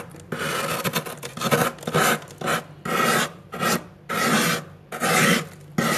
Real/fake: real